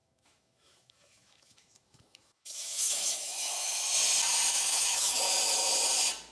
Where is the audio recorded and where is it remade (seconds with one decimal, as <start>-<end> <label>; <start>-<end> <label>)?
0.0-3.8 remade; 3.8-4.5 recorded; 4.5-5.3 remade; 5.3-6.3 recorded